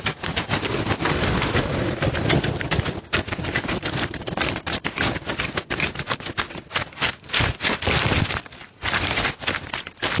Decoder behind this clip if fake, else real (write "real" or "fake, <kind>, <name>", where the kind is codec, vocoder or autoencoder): real